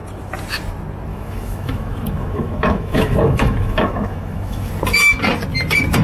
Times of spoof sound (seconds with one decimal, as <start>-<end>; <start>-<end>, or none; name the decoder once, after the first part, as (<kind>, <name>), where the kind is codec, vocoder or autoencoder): 1.1-4.7 (autoencoder, DAC-VAE)